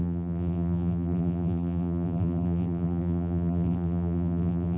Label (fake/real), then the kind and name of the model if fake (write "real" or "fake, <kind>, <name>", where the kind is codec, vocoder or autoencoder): fake, vocoder, BigVGAN v2